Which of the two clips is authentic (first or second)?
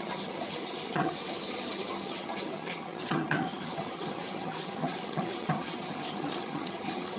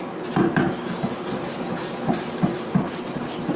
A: second